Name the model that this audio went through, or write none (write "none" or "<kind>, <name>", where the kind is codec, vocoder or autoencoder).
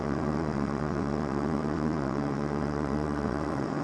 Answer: vocoder, WaveNeXt